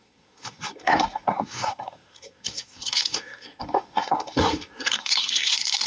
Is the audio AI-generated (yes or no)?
yes